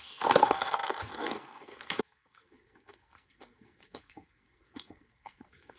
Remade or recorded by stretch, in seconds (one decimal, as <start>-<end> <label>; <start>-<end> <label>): 0.0-5.8 remade